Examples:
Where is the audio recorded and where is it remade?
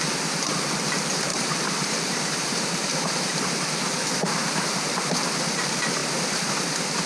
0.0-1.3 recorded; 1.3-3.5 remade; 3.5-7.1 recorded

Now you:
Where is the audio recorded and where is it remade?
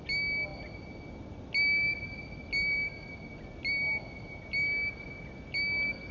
0.0-6.1 recorded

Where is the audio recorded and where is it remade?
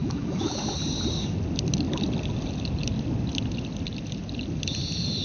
0.0-0.6 remade; 0.6-5.2 recorded